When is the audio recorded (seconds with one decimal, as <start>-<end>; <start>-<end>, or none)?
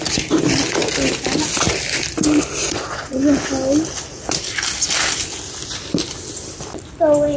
0.0-2.6; 3.2-7.4